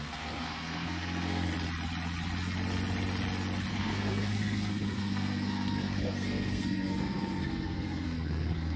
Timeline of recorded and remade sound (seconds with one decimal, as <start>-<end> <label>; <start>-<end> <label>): 0.0-1.5 remade; 1.5-3.7 recorded; 3.7-8.8 remade